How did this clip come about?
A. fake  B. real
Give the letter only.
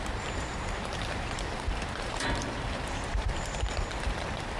A